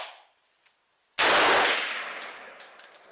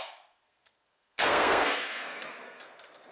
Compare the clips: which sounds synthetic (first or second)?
second